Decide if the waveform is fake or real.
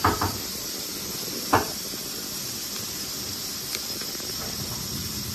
fake